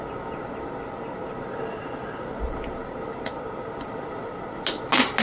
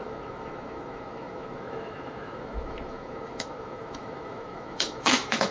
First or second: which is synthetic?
second